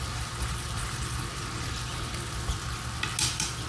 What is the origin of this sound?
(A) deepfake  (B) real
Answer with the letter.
B